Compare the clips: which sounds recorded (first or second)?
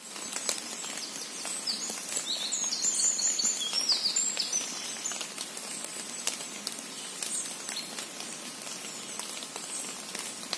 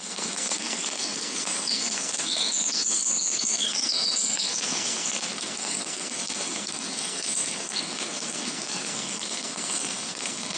first